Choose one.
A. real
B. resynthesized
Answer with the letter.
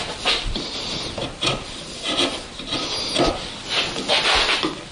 A